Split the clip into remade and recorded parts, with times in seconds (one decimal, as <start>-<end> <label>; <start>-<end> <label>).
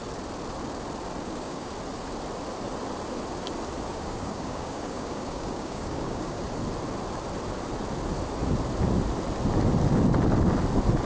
0.0-1.2 recorded; 1.2-1.7 remade; 1.7-3.9 recorded; 3.9-6.4 remade; 6.4-11.0 recorded